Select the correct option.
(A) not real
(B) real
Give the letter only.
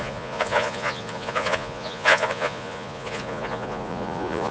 A